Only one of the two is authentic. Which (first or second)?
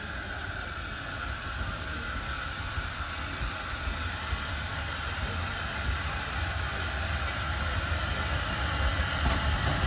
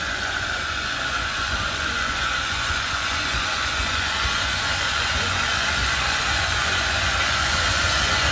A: first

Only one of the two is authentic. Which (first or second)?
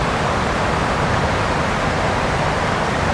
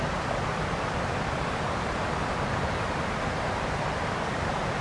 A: first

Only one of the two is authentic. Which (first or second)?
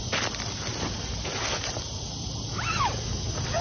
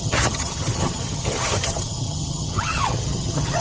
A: first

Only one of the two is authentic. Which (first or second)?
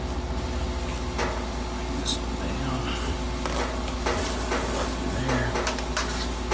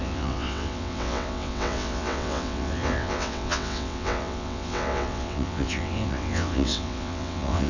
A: first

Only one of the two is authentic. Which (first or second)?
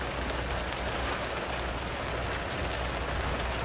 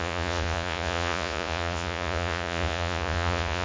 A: first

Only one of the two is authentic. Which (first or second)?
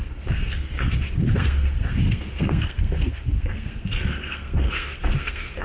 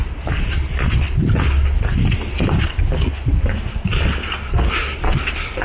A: second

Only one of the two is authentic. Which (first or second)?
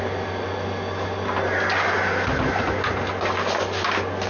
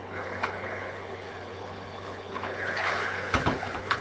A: first